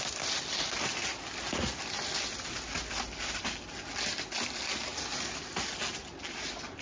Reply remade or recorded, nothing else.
recorded